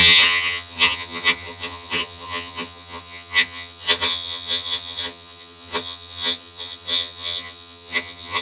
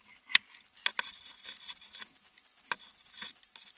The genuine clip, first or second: second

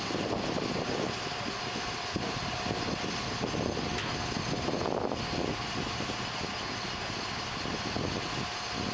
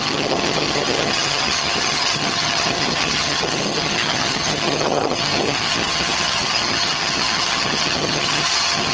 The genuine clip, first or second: first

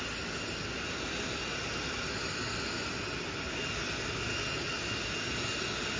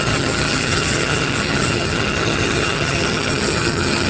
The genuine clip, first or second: first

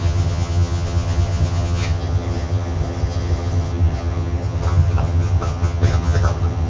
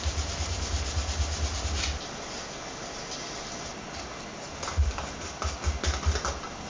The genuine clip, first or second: second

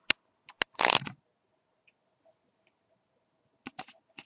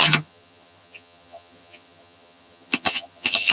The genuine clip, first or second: first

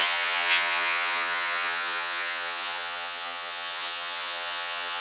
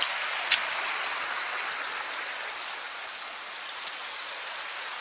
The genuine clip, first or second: second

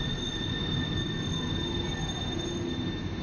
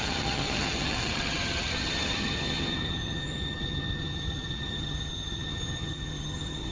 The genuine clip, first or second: first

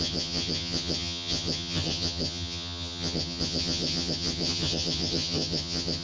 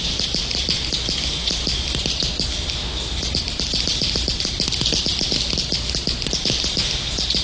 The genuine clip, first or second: second